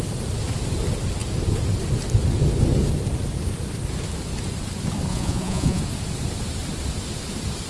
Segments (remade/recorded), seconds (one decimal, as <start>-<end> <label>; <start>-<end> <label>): 0.0-5.1 recorded; 5.1-5.8 remade; 5.8-7.7 recorded